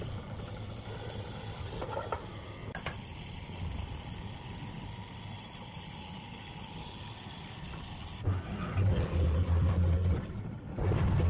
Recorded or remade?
recorded